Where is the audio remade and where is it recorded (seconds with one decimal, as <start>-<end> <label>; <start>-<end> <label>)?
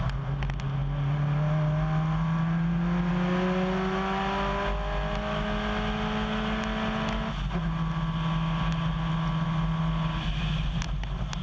0.0-11.4 recorded